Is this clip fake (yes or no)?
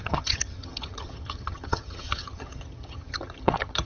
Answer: yes